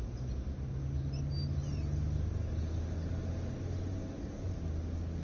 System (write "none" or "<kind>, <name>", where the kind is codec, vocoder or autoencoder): none